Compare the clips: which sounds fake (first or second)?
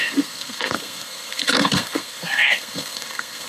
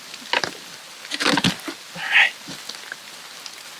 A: first